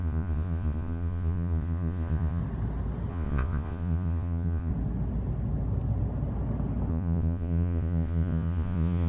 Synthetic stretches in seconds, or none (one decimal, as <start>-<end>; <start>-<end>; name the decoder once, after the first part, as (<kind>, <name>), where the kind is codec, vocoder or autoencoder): 0.0-2.4 (vocoder, Vocos); 3.1-4.7; 6.9-9.1